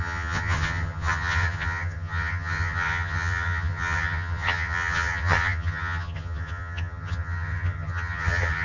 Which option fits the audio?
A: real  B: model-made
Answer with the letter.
B